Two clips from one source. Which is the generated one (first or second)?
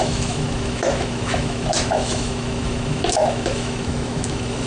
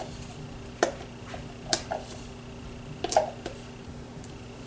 first